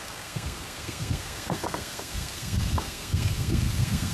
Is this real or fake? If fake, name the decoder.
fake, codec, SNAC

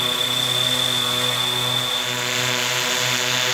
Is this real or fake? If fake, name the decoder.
real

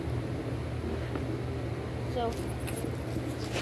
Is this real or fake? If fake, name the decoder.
real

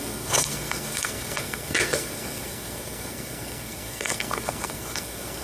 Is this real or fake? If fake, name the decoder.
fake, codec, SNAC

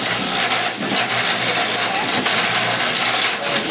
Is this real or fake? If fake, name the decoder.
real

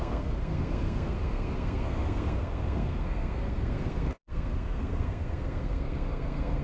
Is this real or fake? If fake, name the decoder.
fake, codec, SNAC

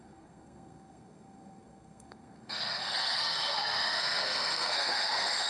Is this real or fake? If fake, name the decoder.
fake, codec, SNAC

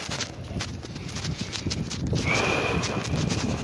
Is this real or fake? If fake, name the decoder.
real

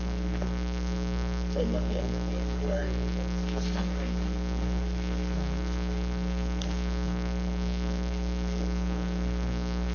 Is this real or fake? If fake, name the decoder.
fake, codec, SNAC